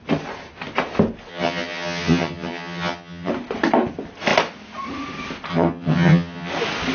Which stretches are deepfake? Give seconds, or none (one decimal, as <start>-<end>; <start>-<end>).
1.3-3.3; 5.5-6.5